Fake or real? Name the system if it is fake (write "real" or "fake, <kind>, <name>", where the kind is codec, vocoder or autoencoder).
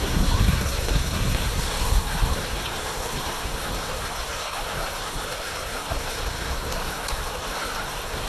fake, codec, SNAC